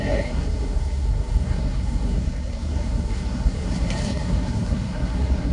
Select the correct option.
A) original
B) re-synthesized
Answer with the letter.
B